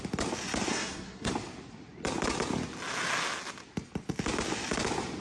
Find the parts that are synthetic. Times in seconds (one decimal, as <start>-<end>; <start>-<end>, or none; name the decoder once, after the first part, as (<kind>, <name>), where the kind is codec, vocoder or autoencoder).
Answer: 0.7-1.3 (codec, SNAC)